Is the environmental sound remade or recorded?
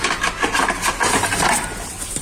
recorded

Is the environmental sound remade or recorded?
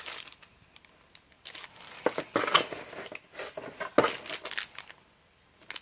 recorded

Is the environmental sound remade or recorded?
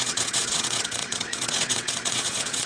remade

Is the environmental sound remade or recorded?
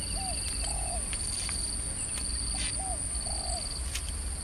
recorded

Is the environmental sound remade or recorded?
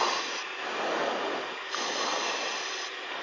recorded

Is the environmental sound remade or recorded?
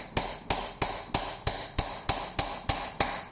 recorded